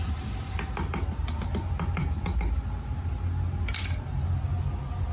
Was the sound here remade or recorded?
recorded